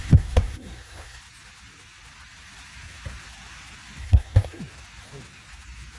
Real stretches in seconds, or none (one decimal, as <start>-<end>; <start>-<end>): 1.2-4.0; 4.6-6.0

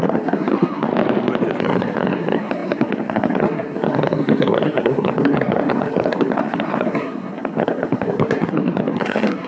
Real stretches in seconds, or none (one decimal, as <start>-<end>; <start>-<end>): 0.9-1.6

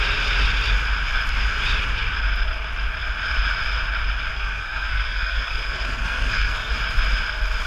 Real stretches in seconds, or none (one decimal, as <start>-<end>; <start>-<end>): 0.0-4.3; 6.7-7.7

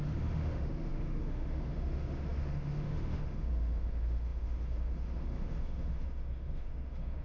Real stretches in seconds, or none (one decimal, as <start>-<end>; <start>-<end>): none

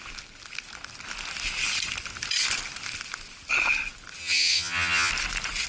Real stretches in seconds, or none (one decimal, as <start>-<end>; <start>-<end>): 0.0-4.2; 5.1-5.7